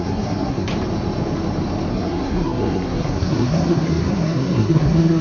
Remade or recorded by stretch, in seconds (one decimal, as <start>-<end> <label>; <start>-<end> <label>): 0.0-0.7 remade; 0.7-1.9 recorded; 1.9-5.2 remade